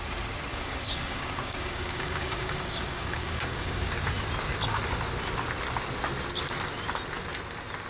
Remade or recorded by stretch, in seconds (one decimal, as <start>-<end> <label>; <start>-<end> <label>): 0.0-0.5 recorded; 0.5-3.9 remade; 3.9-7.9 recorded